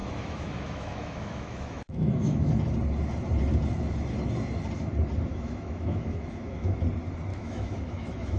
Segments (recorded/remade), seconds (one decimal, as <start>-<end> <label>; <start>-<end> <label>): 0.0-2.5 remade; 2.5-5.3 recorded; 5.3-6.8 remade; 6.8-7.3 recorded; 7.3-8.4 remade